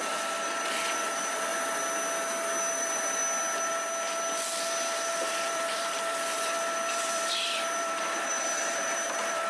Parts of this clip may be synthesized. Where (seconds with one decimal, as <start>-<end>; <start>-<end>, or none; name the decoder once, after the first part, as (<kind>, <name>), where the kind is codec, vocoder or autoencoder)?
0.0-1.5 (vocoder, BigVGAN v2); 2.7-3.2; 5.1-9.5

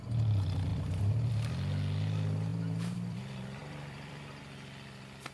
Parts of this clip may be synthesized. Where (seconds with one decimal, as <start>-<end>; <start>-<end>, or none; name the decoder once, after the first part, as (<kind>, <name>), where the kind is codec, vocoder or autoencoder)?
0.7-1.3 (vocoder, BigVGAN v2); 2.5-3.2; 3.6-4.4